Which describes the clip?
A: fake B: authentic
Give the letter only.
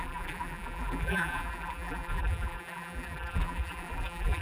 A